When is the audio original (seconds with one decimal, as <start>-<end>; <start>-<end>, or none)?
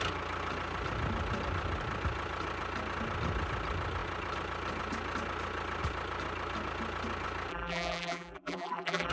0.0-7.5